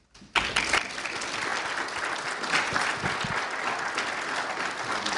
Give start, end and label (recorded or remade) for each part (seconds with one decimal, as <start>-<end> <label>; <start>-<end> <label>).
0.0-5.2 recorded